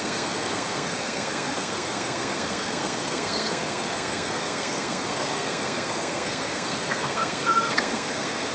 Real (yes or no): no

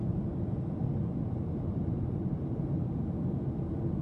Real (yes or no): yes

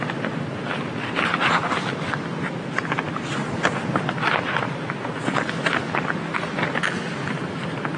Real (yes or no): yes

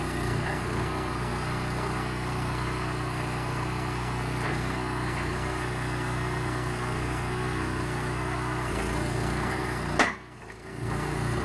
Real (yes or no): no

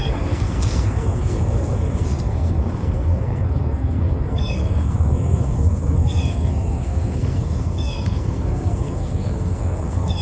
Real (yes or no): no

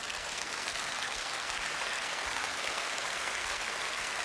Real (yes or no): no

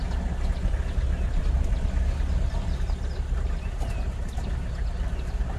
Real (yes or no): yes